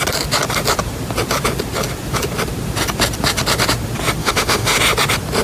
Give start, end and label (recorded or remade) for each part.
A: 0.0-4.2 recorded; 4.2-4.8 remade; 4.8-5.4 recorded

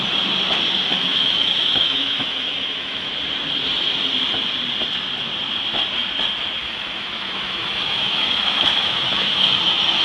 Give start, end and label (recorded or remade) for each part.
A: 0.0-0.9 recorded; 0.9-3.1 remade; 3.1-6.6 recorded; 6.6-9.6 remade; 9.6-10.0 recorded

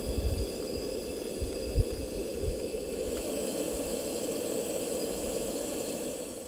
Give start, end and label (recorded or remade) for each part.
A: 0.0-2.3 recorded; 2.3-6.5 remade